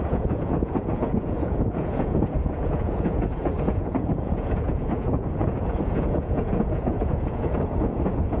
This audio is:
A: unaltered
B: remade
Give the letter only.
B